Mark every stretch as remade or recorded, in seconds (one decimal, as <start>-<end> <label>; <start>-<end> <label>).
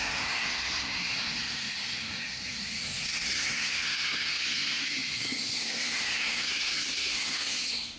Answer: 0.0-8.0 remade